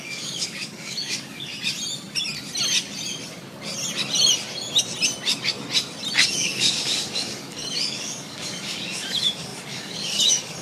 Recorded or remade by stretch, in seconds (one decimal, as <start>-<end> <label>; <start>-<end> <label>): 0.0-1.5 remade; 1.5-6.3 recorded; 6.3-10.6 remade